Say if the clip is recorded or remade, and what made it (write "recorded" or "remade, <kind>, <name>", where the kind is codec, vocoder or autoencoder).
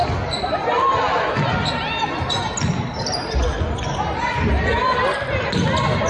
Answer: recorded